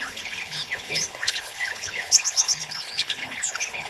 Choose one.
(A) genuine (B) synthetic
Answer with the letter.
B